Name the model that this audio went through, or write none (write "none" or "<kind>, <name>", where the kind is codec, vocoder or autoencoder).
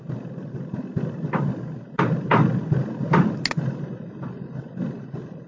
none